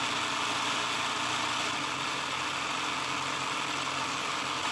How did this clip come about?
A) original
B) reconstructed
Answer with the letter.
A